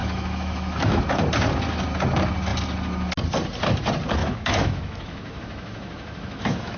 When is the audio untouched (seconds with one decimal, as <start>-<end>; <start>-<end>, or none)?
1.0-4.2